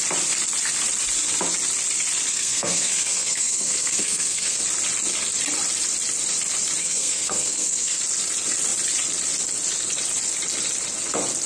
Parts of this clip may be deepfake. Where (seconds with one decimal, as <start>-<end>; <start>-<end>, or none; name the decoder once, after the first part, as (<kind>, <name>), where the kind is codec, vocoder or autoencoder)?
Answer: 2.3-4.6 (codec, SNAC); 6.8-8.0